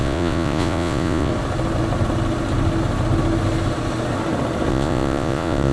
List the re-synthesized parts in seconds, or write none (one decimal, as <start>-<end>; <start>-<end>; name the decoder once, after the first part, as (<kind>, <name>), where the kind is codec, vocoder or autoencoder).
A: 0.0-1.3 (vocoder, Vocos); 4.7-5.7